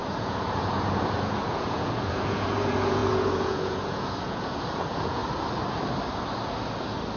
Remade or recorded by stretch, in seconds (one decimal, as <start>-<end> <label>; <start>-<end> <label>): 0.0-5.2 remade; 5.2-7.2 recorded